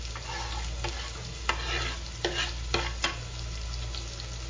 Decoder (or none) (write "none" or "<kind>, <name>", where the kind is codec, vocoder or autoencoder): none